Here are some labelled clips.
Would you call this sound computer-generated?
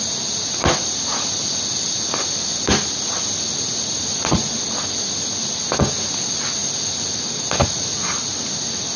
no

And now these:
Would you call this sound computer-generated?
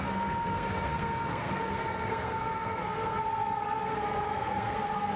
yes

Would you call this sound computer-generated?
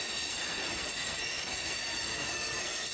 yes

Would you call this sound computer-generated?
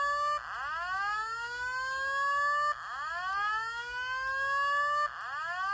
no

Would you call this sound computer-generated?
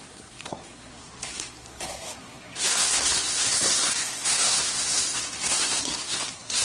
yes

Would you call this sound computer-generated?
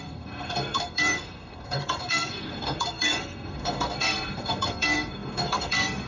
yes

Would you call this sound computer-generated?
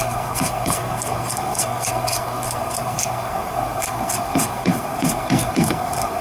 yes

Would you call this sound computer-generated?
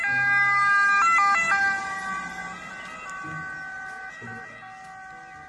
no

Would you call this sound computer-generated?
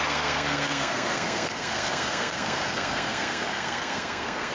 yes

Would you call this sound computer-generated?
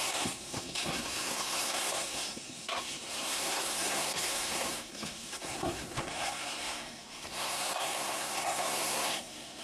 yes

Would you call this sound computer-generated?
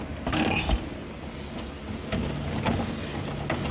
no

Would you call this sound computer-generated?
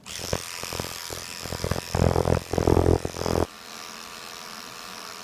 no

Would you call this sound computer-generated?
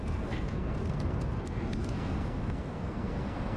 yes